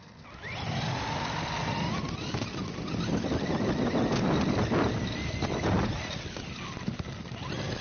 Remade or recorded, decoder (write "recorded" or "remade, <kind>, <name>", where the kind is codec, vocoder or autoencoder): recorded